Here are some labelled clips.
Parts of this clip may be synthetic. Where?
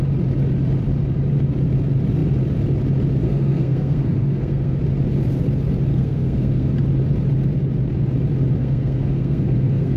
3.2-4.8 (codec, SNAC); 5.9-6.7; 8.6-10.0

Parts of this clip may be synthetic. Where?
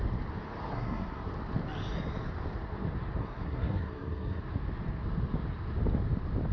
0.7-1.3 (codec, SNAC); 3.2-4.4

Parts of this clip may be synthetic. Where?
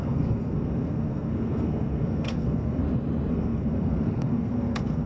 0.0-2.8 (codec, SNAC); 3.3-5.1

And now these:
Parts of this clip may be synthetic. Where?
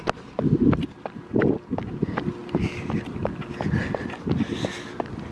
none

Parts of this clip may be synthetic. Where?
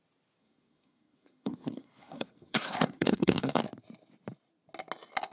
0.4-3.6 (codec, SNAC)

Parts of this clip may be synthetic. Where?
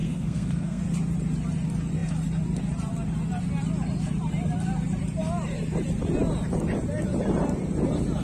0.0-0.8 (codec, SNAC)